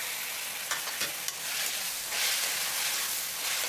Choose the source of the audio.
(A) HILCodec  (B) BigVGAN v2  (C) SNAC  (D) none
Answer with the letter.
D